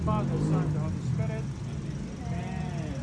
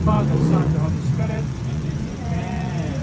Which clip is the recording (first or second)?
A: first